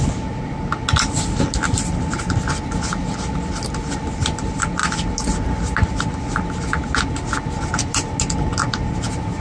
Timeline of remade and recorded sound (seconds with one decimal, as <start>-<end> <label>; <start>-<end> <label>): 0.0-9.4 recorded